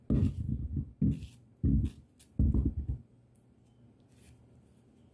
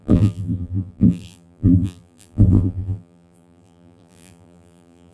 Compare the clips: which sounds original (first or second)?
first